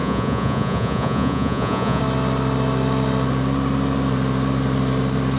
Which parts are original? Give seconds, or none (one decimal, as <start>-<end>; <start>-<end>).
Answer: 2.0-5.4